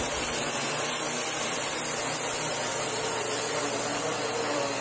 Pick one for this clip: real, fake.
fake